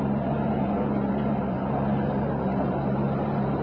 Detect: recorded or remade recorded